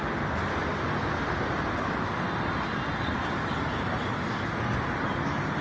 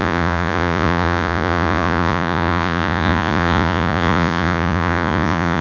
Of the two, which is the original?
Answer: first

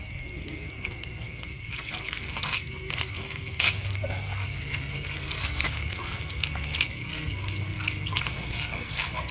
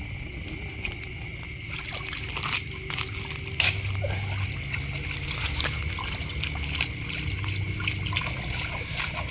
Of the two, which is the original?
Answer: second